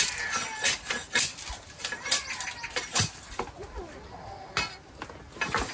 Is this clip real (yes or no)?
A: yes